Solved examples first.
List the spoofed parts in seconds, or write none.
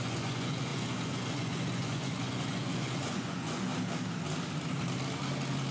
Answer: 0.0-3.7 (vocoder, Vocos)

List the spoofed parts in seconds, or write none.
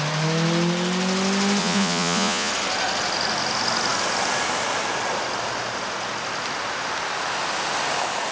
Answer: 1.6-2.5 (vocoder, Vocos)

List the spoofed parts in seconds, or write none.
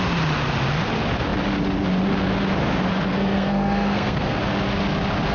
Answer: 3.1-4.4 (codec, SNAC)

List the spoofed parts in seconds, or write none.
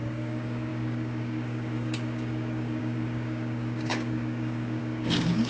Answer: 0.0-5.5 (codec, DAC)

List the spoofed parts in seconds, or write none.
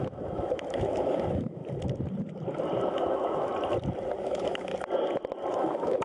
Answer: 0.0-1.6 (autoencoder, DAC-VAE); 2.9-3.5; 4.2-4.7; 5.5-6.0